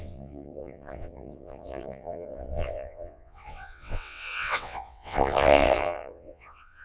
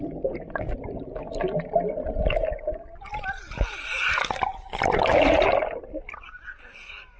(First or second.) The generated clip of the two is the first